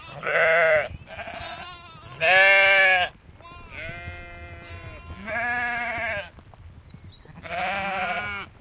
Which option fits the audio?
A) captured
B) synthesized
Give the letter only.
A